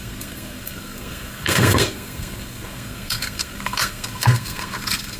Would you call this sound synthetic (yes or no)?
yes